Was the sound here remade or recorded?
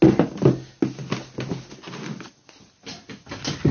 recorded